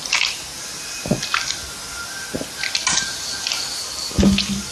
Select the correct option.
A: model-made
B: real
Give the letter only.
B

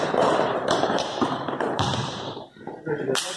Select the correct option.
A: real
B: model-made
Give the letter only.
B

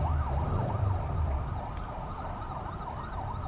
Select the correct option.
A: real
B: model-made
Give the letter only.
B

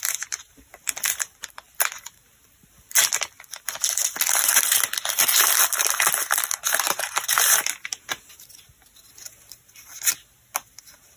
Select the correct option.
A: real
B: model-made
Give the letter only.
A